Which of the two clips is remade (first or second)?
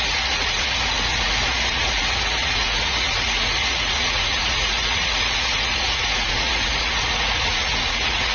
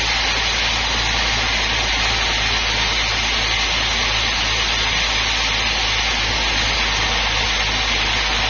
first